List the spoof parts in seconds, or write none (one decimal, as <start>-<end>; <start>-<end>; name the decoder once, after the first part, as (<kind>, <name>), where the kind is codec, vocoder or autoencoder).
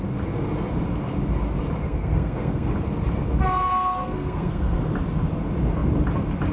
1.8-2.7 (codec, SNAC); 3.6-4.8